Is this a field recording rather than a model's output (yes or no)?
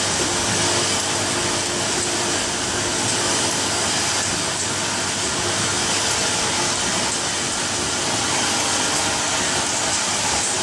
yes